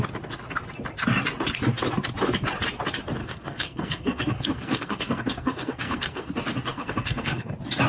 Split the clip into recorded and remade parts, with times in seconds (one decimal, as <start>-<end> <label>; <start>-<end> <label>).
0.0-3.2 recorded; 3.2-6.3 remade; 6.3-6.7 recorded; 6.7-7.5 remade; 7.5-7.9 recorded